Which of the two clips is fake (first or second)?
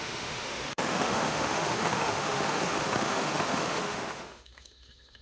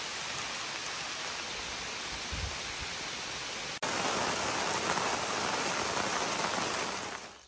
first